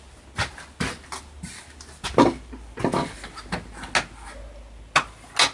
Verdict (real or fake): real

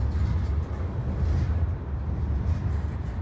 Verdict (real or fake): real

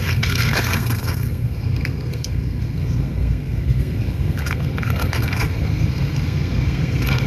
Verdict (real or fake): fake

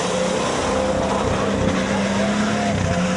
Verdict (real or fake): real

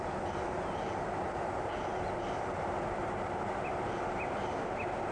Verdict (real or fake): real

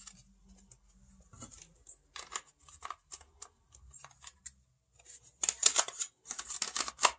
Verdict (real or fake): real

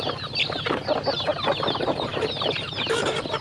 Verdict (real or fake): real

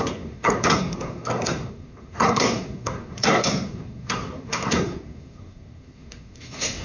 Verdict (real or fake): fake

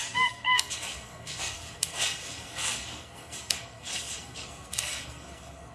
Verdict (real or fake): fake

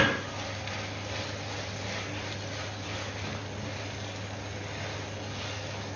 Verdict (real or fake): real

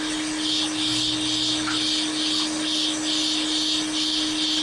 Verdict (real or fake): real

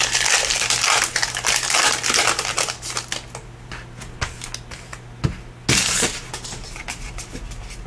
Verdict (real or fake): real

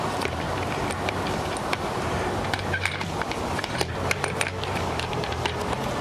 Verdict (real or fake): real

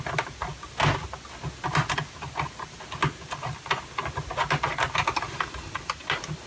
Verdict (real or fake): real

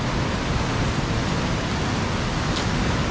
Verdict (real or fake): real